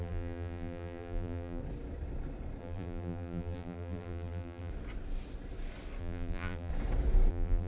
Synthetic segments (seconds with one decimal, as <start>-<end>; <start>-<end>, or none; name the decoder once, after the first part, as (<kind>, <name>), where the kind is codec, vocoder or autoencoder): 0.0-1.6 (vocoder, BigVGAN v2); 2.6-4.7; 6.0-6.7; 7.3-7.7

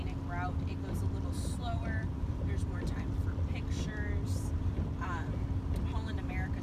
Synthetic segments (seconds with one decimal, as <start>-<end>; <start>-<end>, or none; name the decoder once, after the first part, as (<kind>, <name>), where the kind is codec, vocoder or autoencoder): 0.9-6.6 (vocoder, BigVGAN v2)

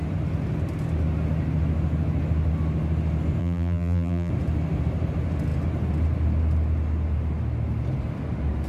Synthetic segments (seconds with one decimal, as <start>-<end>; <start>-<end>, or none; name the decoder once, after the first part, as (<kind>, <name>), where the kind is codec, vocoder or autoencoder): 3.4-4.3 (vocoder, BigVGAN v2)